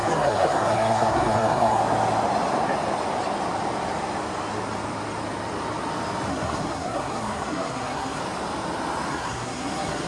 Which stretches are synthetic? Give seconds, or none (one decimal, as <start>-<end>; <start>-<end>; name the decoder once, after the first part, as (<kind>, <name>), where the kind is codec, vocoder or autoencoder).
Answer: 0.0-1.8 (codec, SNAC); 6.3-8.2; 9.1-10.1